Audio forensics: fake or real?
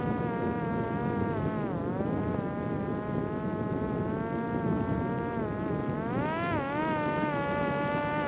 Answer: real